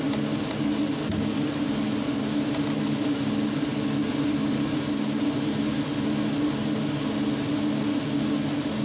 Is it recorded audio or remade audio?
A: recorded